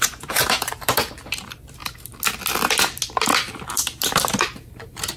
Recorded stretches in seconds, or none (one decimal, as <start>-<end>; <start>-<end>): 1.8-4.1